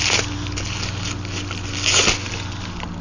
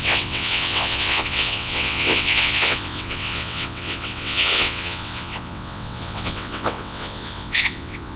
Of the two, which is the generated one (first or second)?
second